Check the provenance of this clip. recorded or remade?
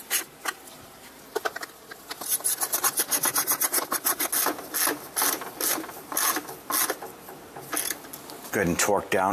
recorded